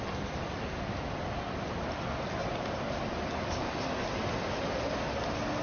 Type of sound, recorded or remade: recorded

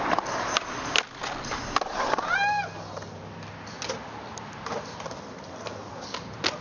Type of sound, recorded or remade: recorded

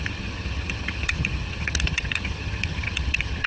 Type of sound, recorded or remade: remade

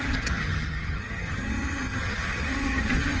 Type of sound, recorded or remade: remade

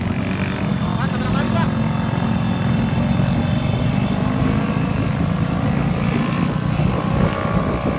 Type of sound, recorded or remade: recorded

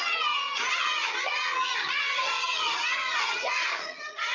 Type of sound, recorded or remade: remade